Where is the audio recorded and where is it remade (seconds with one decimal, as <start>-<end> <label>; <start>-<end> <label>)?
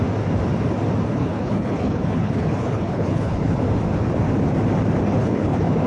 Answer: 0.0-1.1 recorded; 1.1-3.6 remade; 3.6-5.2 recorded; 5.2-5.9 remade